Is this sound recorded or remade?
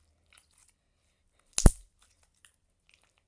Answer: recorded